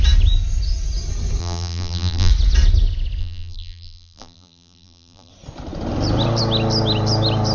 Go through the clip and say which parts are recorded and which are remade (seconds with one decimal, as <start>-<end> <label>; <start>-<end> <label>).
0.0-1.4 recorded; 1.4-2.3 remade; 2.3-3.2 recorded; 3.2-5.3 remade; 5.3-7.5 recorded

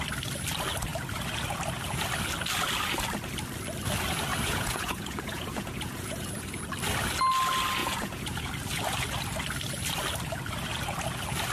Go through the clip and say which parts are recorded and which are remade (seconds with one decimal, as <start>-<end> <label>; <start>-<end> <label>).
0.0-4.3 recorded; 4.3-6.6 remade; 6.6-7.8 recorded; 7.8-8.5 remade; 8.5-11.5 recorded

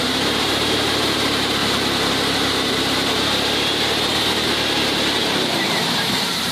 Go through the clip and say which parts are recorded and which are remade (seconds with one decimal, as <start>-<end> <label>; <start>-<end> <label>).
0.0-1.6 remade; 1.6-2.6 recorded; 2.6-6.5 remade